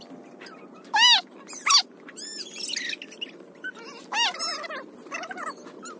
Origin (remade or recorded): recorded